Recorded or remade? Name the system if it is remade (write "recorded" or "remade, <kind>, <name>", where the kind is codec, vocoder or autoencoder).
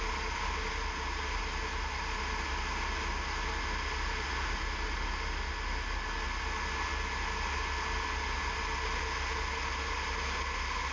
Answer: recorded